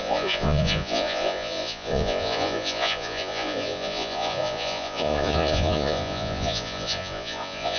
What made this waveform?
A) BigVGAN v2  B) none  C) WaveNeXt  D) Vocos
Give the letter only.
D